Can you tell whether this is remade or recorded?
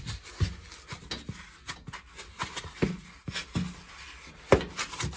recorded